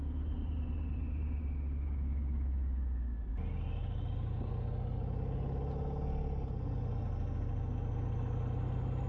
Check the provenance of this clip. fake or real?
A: real